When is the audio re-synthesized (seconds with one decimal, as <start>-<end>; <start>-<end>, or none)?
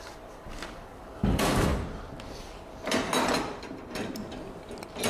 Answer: 0.0-1.7